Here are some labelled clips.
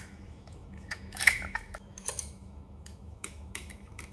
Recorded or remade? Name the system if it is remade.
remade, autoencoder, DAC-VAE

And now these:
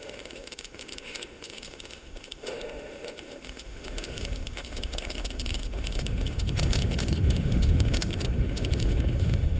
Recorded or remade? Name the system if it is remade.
remade, autoencoder, DAC-VAE